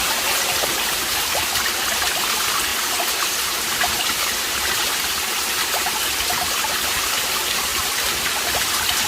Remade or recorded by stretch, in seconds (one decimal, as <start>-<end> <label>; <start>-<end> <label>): 0.0-9.1 recorded